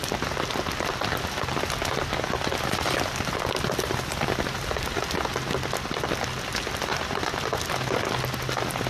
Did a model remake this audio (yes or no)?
no